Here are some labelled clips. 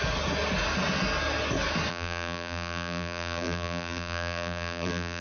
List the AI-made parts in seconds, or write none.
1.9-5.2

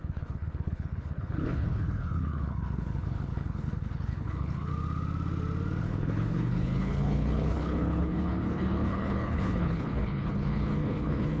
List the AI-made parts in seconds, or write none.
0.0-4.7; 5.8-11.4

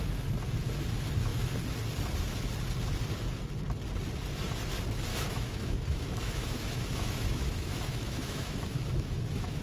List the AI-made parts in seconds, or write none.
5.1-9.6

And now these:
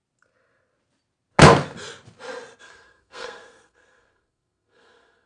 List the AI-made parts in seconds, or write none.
2.6-5.3

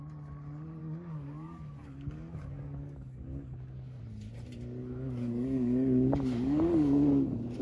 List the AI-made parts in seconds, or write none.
0.8-4.0; 4.8-7.6

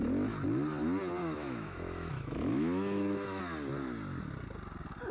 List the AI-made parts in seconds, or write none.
1.2-3.4

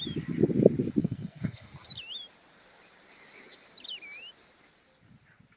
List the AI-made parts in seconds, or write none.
1.0-1.7